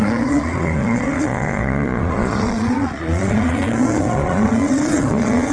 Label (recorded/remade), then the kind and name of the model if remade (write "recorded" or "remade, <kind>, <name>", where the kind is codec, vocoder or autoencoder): remade, vocoder, Vocos